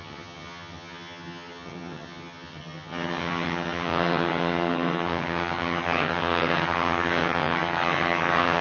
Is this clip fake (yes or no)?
yes